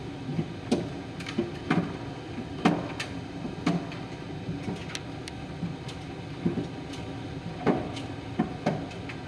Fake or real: real